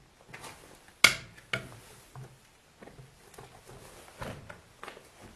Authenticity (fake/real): real